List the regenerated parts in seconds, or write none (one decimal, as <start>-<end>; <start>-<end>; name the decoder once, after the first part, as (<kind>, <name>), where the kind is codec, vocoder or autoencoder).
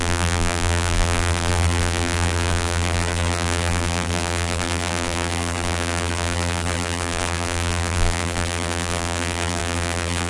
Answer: 0.0-10.3 (vocoder, BigVGAN v2)